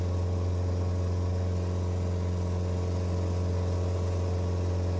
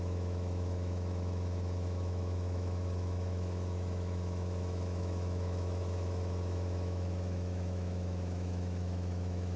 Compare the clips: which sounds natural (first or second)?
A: first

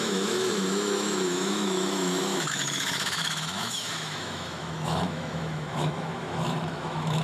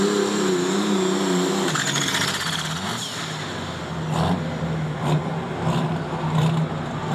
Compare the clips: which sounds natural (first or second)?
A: second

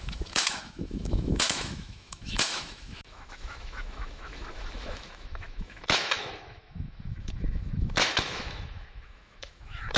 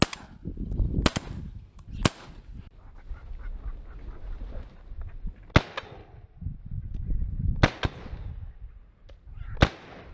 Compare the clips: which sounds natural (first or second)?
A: second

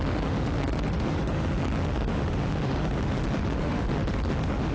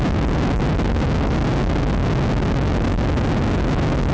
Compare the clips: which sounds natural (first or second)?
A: second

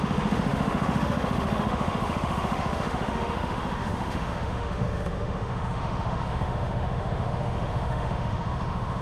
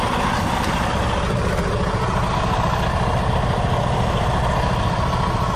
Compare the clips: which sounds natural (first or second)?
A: second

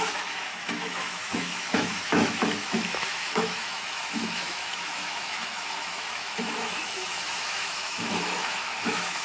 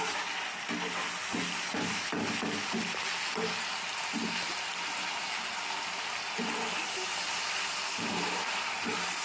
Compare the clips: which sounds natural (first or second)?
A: second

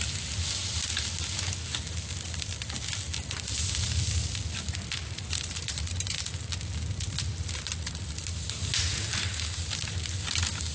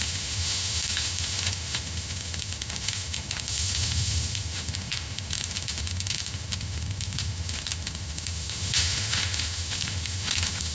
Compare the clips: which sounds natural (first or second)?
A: first